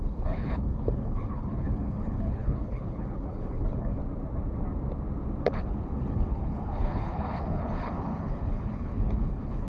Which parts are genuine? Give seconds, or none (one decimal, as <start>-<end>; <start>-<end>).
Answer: 4.0-5.4